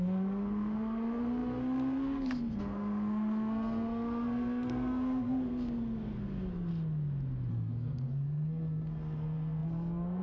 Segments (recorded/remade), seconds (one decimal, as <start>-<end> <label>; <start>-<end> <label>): 0.0-6.7 remade; 6.7-7.5 recorded; 7.5-10.2 remade